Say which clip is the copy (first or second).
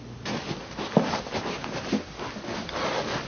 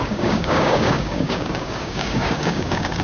second